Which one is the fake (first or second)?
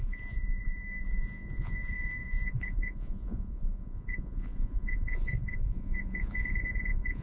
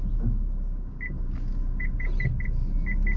first